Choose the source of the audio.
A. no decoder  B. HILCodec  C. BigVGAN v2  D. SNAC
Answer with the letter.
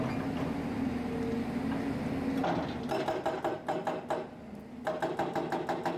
A